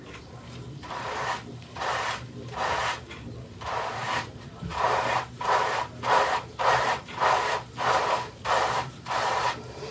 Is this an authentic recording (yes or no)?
no